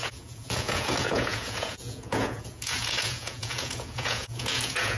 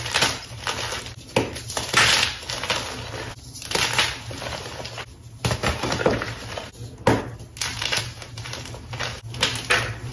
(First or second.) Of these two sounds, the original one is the second